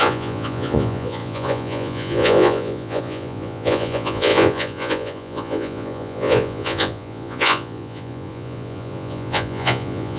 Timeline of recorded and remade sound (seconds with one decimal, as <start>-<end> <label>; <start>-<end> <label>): 0.0-10.2 remade